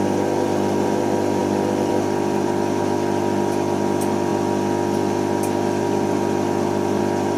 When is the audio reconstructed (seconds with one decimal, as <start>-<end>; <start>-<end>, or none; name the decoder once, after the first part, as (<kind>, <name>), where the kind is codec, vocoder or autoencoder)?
none